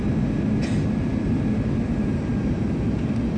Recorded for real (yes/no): yes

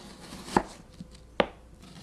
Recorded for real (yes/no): yes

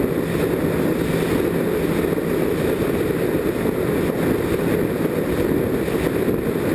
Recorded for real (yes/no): yes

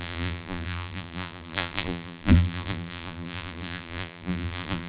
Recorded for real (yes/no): no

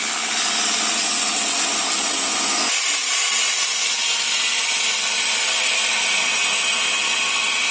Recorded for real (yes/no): yes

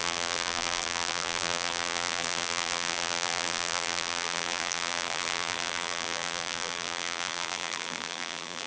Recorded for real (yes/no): no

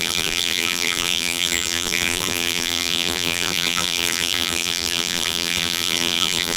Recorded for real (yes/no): no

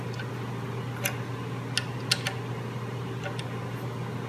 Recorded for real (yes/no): yes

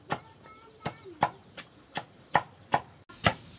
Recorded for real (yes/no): yes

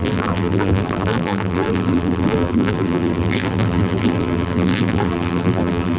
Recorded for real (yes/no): no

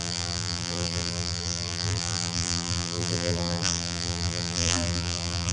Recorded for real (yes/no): no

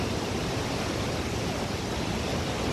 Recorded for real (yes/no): yes